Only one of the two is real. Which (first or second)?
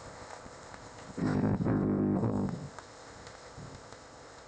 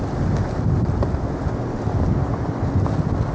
second